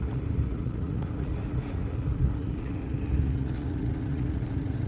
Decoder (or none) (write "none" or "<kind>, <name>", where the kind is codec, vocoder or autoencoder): vocoder, Vocos